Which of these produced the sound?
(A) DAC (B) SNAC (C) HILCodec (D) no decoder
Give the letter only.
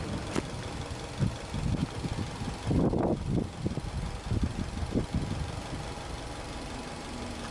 D